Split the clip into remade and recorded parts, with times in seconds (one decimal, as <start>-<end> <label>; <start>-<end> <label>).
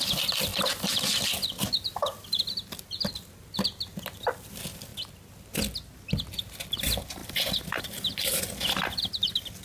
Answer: 0.0-9.6 recorded